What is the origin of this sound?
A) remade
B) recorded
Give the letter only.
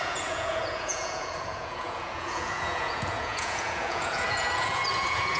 A